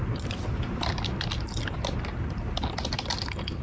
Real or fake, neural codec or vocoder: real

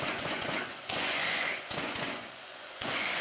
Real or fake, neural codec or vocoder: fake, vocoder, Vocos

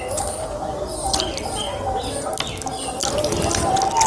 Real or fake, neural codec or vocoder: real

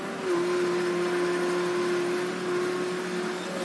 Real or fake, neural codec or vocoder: real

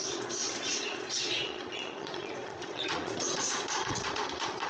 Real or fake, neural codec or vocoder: fake, vocoder, Vocos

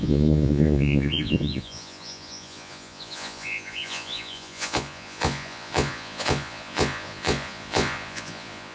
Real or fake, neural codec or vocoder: fake, vocoder, Vocos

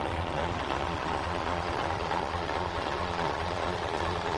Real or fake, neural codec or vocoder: fake, vocoder, Vocos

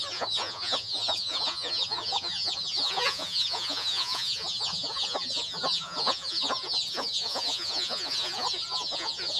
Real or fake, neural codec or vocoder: fake, vocoder, Vocos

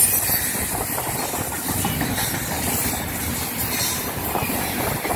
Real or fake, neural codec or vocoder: real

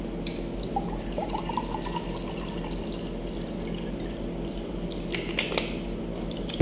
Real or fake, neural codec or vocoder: real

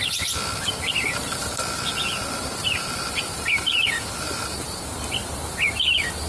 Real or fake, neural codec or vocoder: real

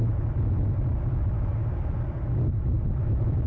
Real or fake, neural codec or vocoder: real